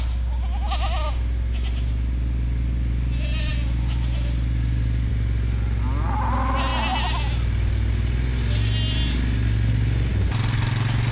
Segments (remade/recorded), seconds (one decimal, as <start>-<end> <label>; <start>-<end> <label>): 0.0-11.1 recorded